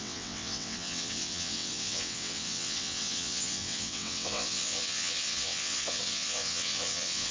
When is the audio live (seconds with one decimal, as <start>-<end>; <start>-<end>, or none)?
none